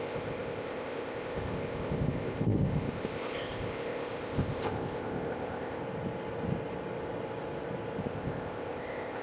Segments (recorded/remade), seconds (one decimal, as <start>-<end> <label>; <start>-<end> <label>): 0.0-5.8 remade; 5.8-8.0 recorded; 8.0-9.2 remade